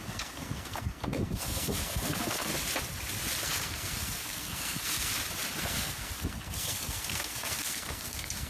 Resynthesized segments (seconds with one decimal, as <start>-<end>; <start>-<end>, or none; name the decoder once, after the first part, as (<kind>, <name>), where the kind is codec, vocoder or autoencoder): 0.0-2.5 (codec, SNAC); 3.4-5.1; 5.6-8.5